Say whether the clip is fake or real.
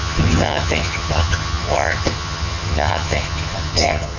fake